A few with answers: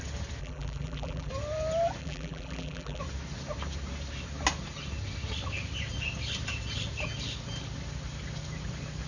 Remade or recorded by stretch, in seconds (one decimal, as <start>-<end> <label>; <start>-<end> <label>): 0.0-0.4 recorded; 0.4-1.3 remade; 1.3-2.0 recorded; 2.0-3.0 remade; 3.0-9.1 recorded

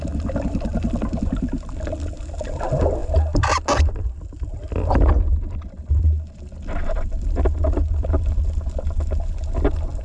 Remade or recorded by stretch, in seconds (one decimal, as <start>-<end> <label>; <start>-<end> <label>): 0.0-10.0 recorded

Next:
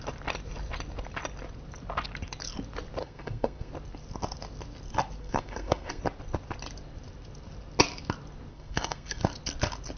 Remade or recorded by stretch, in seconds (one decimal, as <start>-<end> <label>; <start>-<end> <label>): 0.0-3.0 recorded; 3.0-3.7 remade; 3.7-5.2 recorded; 5.2-6.0 remade; 6.0-8.5 recorded; 8.5-9.2 remade; 9.2-10.0 recorded